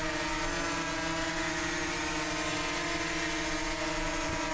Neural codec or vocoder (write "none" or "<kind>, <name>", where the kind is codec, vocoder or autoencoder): none